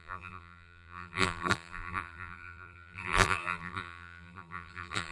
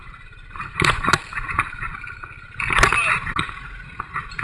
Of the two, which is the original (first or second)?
second